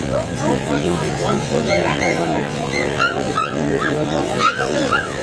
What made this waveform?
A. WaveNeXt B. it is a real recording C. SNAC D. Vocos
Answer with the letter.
A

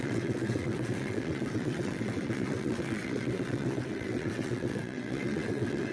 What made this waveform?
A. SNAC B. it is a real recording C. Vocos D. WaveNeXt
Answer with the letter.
D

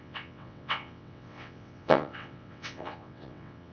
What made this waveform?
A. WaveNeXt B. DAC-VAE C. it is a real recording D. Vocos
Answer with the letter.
A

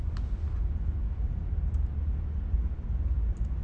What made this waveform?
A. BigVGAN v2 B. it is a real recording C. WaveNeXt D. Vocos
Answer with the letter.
B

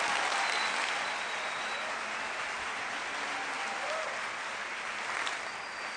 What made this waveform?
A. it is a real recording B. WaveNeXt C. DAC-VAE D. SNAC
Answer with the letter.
A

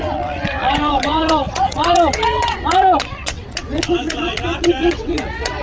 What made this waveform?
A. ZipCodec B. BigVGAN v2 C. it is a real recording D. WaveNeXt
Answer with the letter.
D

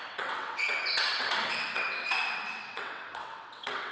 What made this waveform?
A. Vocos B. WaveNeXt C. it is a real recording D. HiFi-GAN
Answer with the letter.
B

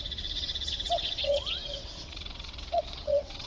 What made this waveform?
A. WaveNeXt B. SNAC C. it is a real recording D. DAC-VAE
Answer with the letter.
A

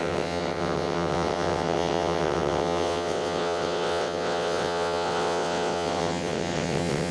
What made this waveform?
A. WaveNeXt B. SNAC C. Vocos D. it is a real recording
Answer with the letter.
A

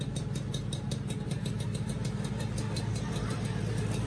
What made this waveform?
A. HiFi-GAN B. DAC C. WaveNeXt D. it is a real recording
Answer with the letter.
D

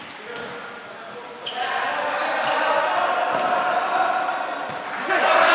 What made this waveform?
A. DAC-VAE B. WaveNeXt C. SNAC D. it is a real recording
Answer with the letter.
D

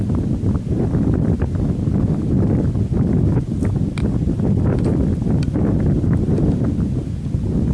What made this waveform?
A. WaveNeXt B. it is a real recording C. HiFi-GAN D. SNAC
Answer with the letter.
B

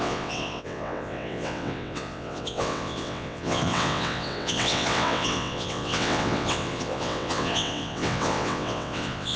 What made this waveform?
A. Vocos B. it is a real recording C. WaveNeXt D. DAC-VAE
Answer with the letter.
C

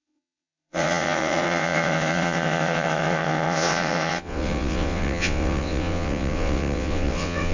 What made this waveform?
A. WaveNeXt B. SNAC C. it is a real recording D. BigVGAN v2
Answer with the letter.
A